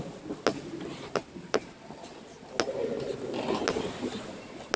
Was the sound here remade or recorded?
recorded